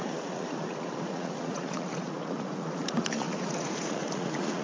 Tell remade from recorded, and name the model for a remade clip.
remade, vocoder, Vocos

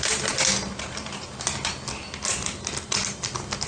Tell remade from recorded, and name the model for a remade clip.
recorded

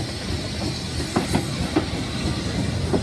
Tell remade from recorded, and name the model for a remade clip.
recorded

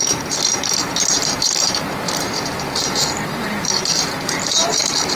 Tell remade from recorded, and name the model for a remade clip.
remade, vocoder, BigVGAN v2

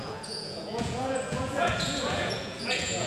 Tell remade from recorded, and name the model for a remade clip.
remade, vocoder, Vocos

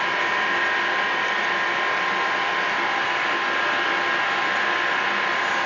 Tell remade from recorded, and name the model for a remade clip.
recorded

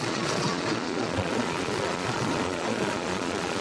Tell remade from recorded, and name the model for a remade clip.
remade, vocoder, Vocos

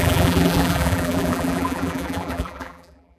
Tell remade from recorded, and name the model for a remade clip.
remade, vocoder, BigVGAN v2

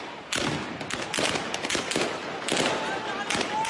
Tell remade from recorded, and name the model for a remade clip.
recorded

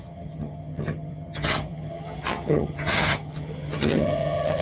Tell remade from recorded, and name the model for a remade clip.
remade, vocoder, HiFi-GAN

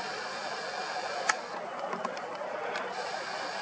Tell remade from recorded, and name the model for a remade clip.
recorded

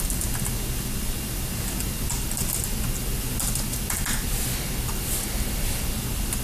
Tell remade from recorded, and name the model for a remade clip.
recorded